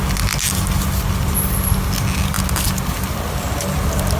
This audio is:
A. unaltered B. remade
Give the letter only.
A